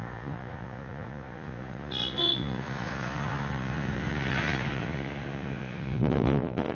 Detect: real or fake fake